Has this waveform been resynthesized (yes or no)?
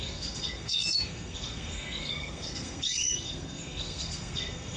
yes